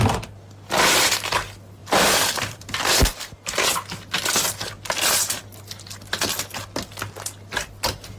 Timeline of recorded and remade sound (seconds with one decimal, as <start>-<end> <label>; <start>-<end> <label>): 0.0-1.8 recorded; 1.8-2.8 remade; 2.8-8.2 recorded

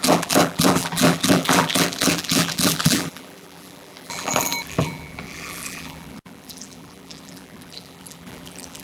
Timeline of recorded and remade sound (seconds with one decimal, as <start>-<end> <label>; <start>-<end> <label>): 0.0-8.8 remade

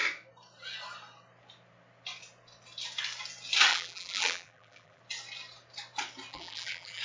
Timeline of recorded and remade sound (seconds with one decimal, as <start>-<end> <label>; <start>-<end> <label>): 0.0-3.7 recorded; 3.7-5.0 remade; 5.0-6.3 recorded; 6.3-7.0 remade